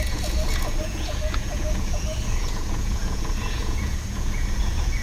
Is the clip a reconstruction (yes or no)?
yes